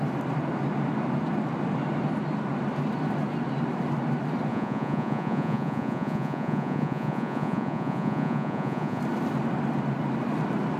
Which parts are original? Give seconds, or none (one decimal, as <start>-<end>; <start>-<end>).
0.0-4.5; 9.0-10.8

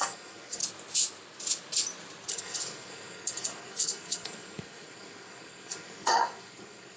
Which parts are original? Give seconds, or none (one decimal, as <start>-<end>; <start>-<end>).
0.6-2.3

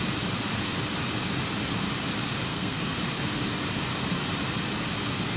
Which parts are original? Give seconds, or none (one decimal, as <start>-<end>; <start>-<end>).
0.0-2.5; 3.0-5.4

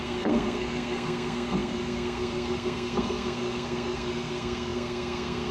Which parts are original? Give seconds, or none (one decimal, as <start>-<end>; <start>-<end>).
none

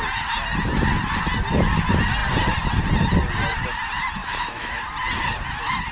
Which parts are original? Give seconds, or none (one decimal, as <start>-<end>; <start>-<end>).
0.0-4.2; 4.8-5.9

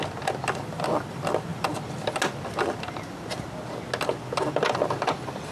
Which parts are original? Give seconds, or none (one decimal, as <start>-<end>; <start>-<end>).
0.0-5.5

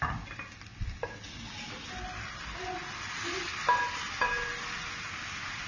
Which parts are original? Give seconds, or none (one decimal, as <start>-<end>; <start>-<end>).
0.0-5.7